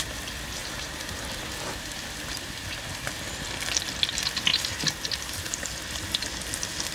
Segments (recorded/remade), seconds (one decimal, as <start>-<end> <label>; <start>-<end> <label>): 0.0-0.6 recorded; 0.6-1.9 remade; 1.9-4.5 recorded; 4.5-6.0 remade; 6.0-6.9 recorded